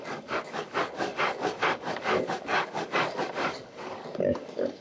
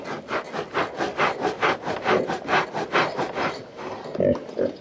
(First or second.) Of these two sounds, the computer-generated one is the first